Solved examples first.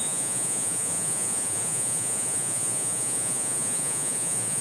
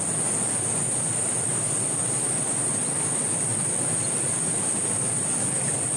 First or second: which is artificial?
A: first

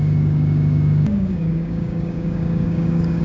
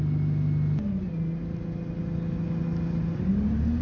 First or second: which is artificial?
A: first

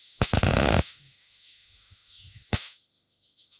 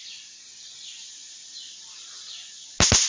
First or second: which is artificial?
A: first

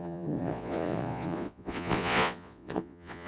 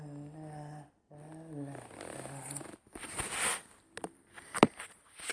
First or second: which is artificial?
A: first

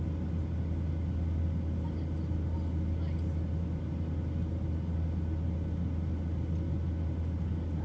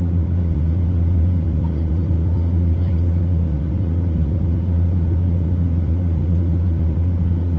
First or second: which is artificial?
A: second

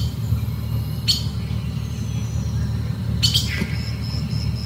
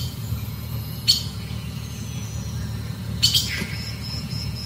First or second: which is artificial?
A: second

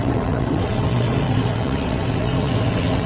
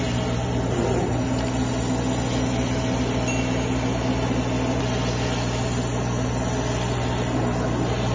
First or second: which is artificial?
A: first